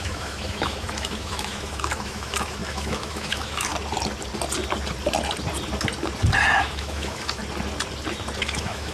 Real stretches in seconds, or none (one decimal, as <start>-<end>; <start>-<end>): 3.7-6.6; 7.4-8.4